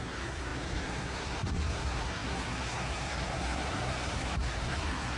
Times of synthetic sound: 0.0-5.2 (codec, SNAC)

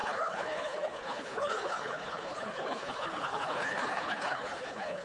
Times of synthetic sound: 0.0-5.0 (codec, HILCodec)

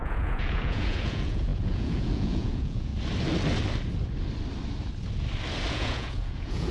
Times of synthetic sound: 0.0-2.9 (vocoder, Vocos); 5.7-6.7

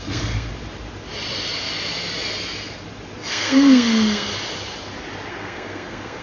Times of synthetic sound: 0.0-0.5 (codec, SNAC); 3.3-4.3; 5.3-6.2